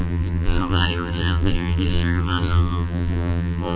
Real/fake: fake